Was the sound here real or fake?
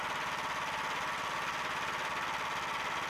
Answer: real